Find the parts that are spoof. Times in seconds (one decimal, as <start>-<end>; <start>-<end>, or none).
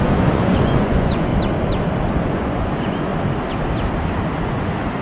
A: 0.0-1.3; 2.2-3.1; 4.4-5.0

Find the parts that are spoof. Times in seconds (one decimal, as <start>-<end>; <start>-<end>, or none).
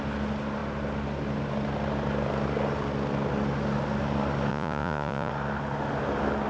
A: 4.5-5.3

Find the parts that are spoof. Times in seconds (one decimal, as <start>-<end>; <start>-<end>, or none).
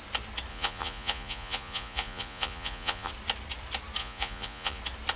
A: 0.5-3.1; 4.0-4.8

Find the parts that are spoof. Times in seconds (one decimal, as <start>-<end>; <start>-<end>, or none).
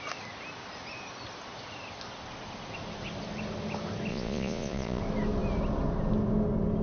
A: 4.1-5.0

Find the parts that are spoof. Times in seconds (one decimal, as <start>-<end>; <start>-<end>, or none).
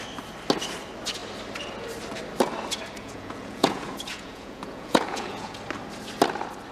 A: 3.0-5.5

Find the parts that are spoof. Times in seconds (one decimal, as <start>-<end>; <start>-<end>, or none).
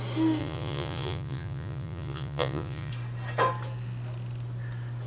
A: 0.4-2.9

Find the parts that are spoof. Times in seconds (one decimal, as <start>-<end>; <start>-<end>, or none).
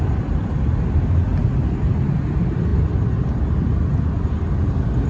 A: none